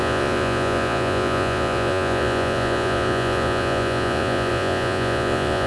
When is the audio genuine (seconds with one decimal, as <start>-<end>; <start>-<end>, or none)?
none